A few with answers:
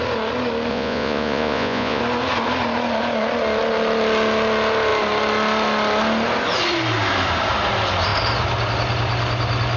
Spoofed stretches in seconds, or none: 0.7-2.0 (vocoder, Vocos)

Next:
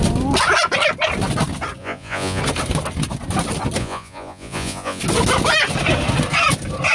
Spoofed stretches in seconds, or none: 1.8-2.4 (vocoder, Vocos); 3.8-5.0

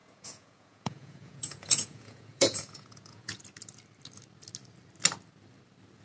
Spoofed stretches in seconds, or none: 0.0-3.4 (vocoder, Vocos)

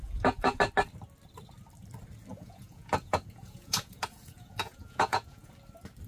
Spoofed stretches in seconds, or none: 0.0-0.6 (vocoder, Vocos); 2.3-5.5

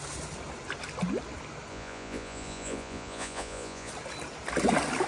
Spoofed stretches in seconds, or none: 1.7-3.9 (vocoder, Vocos)